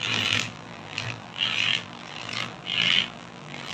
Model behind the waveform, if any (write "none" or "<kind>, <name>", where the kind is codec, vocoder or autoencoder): vocoder, BigVGAN v2